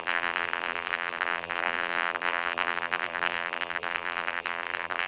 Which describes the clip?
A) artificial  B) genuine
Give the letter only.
A